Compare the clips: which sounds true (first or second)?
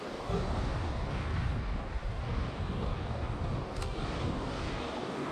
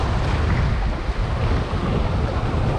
second